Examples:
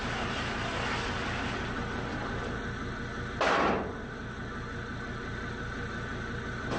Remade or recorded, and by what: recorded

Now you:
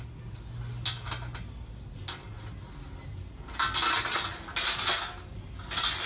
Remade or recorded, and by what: recorded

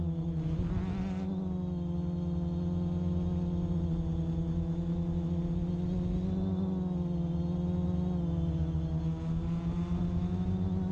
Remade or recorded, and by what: recorded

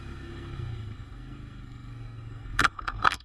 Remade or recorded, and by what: remade, codec, SNAC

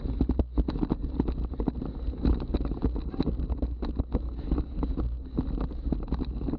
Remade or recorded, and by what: recorded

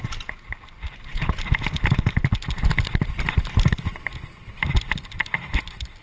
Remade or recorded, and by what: recorded